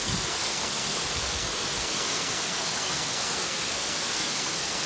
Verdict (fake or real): fake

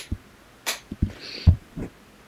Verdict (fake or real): real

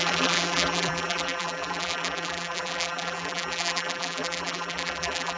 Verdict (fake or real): fake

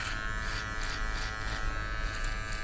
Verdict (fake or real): real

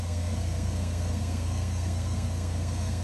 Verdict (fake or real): fake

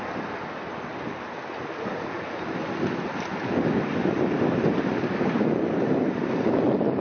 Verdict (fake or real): real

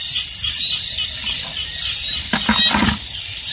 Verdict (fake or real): real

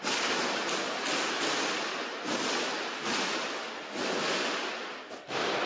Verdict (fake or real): real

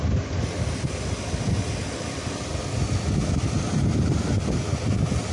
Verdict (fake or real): real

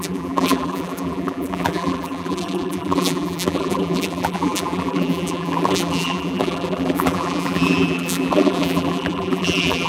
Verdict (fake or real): fake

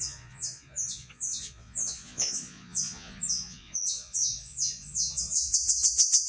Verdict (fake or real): fake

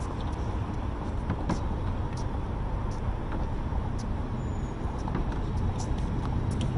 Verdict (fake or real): real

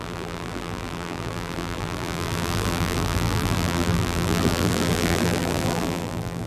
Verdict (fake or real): fake